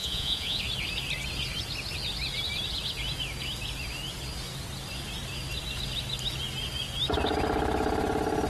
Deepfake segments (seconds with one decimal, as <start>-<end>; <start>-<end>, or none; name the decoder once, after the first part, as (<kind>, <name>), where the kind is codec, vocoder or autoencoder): 0.0-0.6 (vocoder, Vocos)